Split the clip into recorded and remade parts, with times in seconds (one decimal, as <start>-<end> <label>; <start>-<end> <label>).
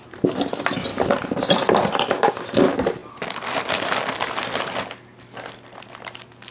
0.0-0.9 recorded; 0.9-2.3 remade; 2.3-6.5 recorded